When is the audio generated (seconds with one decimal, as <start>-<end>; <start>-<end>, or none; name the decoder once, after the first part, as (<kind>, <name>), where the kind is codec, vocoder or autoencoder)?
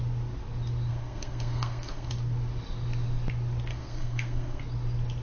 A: 0.9-2.1 (codec, SNAC); 3.7-4.6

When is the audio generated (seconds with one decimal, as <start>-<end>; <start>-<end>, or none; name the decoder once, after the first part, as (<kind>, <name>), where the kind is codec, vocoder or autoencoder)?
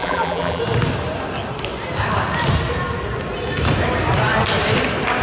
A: 0.0-0.6 (vocoder, BigVGAN v2)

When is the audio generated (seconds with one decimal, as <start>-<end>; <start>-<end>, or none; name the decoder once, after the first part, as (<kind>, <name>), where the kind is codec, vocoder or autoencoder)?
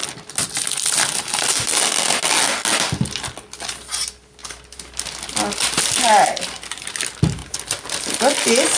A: none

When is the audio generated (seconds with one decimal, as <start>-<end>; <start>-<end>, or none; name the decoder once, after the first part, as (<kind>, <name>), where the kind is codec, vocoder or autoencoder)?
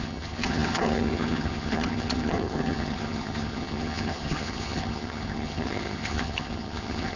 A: 0.0-7.2 (vocoder, HiFi-GAN)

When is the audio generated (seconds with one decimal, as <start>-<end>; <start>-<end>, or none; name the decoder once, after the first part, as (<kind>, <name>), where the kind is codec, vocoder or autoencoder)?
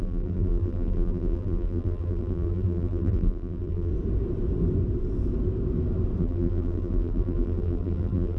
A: 0.0-3.9 (vocoder, BigVGAN v2); 6.2-8.4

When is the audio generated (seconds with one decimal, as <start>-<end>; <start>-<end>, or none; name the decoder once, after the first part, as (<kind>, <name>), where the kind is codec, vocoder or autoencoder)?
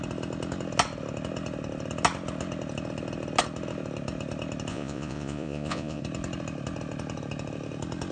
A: 4.7-6.0 (vocoder, Vocos)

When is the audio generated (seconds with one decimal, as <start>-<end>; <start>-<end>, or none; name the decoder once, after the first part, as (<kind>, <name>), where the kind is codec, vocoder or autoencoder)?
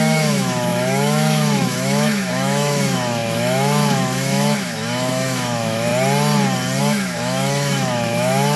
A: 0.0-5.9 (autoencoder, DAC-VAE); 6.8-8.6